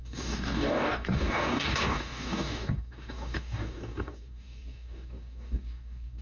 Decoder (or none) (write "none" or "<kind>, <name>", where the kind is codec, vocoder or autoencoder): codec, DAC